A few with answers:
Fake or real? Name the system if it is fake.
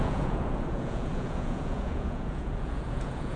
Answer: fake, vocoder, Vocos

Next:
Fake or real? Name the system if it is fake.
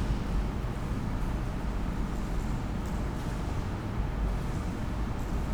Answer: real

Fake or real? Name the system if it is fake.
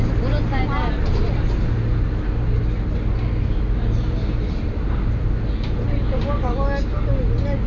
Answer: real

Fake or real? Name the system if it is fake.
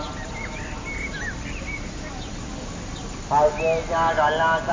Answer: real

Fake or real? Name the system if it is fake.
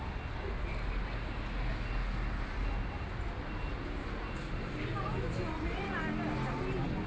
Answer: real